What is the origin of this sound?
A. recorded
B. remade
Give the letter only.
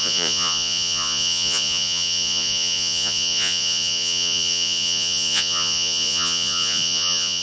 B